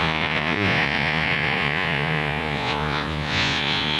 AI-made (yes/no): yes